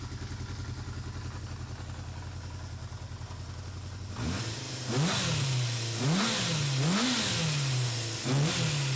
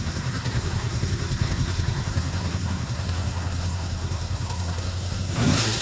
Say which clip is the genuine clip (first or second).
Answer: first